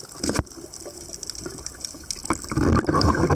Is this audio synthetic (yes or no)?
no